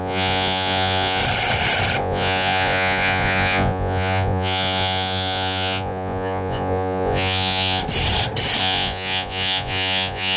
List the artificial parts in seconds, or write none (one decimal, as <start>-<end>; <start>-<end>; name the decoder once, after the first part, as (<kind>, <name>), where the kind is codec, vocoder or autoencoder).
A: 0.0-1.2 (vocoder, Vocos); 2.0-7.8; 8.6-10.4